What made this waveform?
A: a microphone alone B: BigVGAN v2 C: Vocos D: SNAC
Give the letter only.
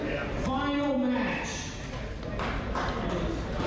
A